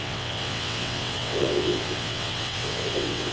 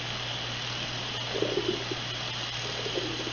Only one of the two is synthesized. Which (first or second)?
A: first